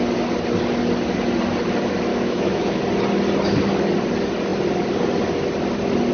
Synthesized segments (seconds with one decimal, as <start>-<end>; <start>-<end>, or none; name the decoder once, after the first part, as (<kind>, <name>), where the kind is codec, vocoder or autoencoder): 2.1-2.8 (autoencoder, DAC-VAE)